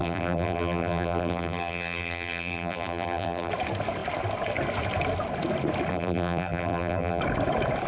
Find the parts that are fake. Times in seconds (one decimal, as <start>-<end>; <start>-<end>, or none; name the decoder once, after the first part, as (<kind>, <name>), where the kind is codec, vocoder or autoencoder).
0.0-3.5 (vocoder, BigVGAN v2); 5.9-7.2